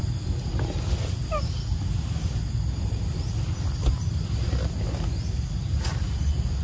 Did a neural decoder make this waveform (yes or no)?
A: no